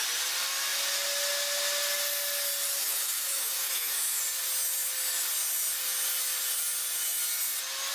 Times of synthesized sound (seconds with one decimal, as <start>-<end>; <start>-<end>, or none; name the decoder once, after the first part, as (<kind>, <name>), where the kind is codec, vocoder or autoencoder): 2.8-4.2 (autoencoder, DAC-VAE)